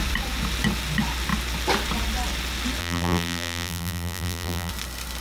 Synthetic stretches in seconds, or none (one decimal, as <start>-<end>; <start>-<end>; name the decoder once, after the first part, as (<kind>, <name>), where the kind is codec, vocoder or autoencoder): 2.8-4.7 (vocoder, BigVGAN v2)

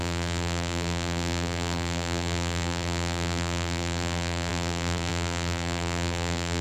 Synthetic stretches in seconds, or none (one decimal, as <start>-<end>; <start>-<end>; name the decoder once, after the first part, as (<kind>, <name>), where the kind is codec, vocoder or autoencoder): 0.0-6.6 (vocoder, BigVGAN v2)

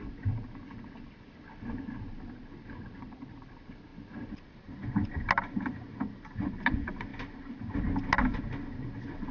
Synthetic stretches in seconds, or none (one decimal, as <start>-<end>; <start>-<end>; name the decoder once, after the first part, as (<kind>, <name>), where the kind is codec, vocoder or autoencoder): none

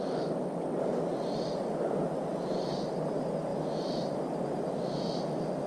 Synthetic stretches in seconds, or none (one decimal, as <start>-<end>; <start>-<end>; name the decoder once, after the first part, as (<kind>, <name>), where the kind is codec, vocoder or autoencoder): none